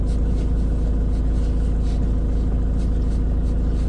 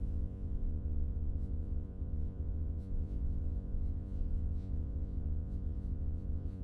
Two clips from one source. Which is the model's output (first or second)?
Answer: second